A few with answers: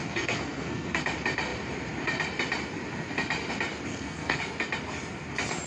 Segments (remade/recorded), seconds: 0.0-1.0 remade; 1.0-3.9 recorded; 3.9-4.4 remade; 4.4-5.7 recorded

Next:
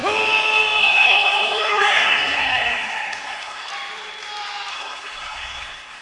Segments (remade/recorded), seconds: 0.0-0.8 recorded; 0.8-3.7 remade; 3.7-4.7 recorded; 4.7-6.0 remade